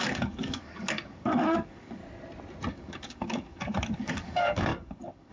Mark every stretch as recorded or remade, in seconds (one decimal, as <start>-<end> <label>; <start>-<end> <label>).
0.0-2.0 remade; 2.0-2.7 recorded; 2.7-5.3 remade